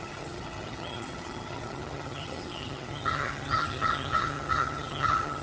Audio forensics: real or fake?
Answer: fake